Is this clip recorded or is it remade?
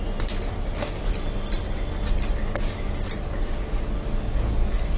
recorded